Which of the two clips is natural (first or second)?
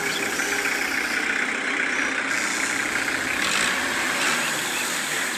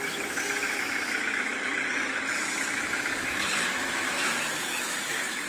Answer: first